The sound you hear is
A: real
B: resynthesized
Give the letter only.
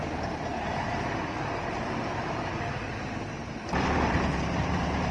B